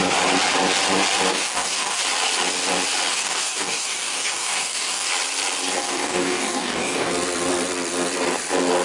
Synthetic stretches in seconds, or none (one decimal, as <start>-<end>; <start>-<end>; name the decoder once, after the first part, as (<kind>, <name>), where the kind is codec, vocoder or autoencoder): 1.3-2.0 (codec, DAC); 3.1-5.1; 5.8-7.1